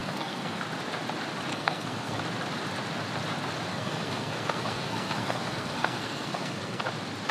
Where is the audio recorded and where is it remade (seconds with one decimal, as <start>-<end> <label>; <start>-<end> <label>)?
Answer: 0.0-0.6 remade; 0.6-1.5 recorded; 1.5-2.2 remade; 2.2-3.7 recorded; 3.7-6.8 remade; 6.8-7.3 recorded